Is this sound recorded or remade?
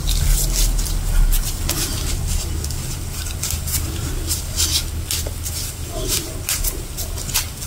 recorded